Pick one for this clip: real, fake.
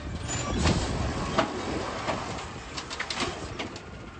real